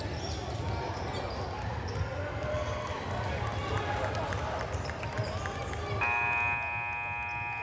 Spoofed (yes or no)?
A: no